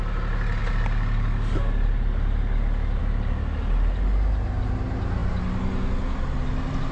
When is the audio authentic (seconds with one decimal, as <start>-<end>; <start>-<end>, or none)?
0.0-6.9